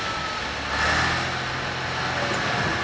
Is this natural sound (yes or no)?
yes